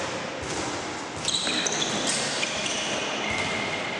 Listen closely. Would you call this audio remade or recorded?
recorded